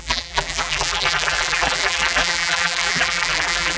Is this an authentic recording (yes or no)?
no